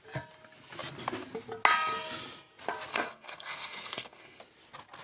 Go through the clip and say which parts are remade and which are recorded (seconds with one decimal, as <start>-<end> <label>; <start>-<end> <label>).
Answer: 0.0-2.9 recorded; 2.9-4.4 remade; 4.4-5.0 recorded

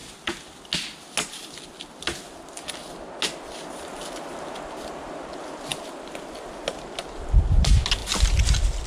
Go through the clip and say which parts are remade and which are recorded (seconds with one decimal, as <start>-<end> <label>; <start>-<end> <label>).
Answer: 0.0-8.9 recorded

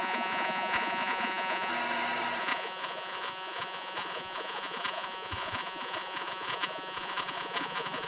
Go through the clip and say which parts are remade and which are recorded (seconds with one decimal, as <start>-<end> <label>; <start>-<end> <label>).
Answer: 0.0-1.7 remade; 1.7-2.4 recorded; 2.4-8.1 remade

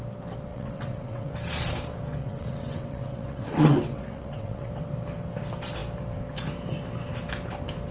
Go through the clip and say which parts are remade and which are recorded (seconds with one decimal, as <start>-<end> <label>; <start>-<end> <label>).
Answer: 0.0-0.5 recorded; 0.5-1.3 remade; 1.3-2.2 recorded; 2.2-4.7 remade; 4.7-7.9 recorded

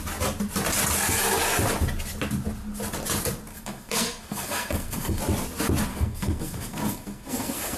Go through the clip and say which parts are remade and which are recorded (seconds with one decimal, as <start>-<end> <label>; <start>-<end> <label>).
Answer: 0.0-3.5 recorded; 3.5-5.2 remade; 5.2-5.9 recorded; 5.9-7.8 remade

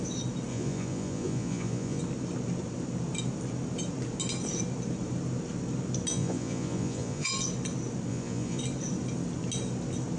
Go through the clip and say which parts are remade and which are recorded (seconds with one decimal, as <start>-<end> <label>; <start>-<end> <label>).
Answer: 0.0-0.5 recorded; 0.5-2.0 remade; 2.0-6.1 recorded; 6.1-7.3 remade; 7.3-8.1 recorded; 8.1-8.6 remade; 8.6-10.2 recorded